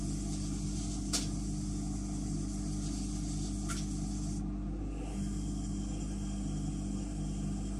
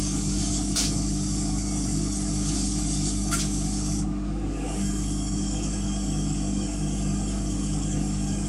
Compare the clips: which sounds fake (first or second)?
second